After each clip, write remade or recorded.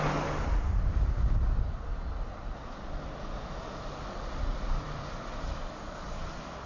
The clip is recorded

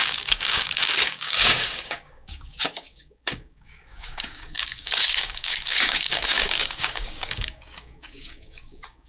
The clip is remade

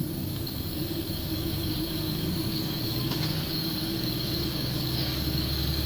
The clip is remade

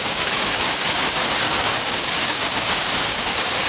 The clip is remade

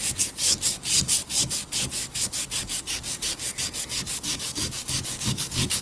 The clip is remade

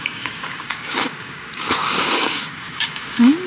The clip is remade